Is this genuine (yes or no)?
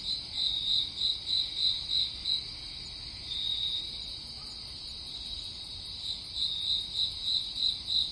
yes